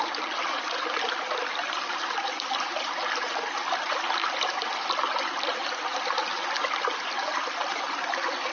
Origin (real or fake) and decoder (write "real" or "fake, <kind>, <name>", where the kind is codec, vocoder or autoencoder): real